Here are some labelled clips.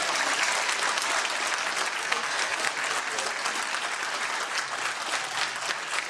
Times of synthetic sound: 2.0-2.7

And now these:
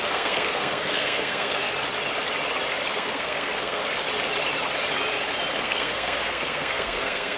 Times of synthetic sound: 0.0-1.7; 2.9-3.8; 5.6-7.4

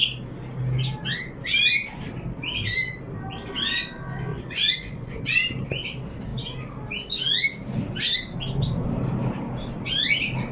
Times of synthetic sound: 4.3-5.2

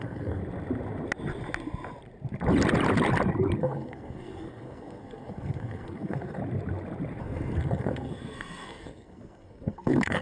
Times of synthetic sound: 0.0-0.4; 3.6-6.4; 7.2-10.2